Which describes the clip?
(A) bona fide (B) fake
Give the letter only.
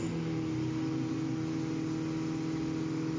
A